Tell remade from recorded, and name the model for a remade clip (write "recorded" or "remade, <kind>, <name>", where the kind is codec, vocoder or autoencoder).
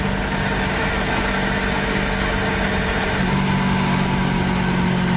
recorded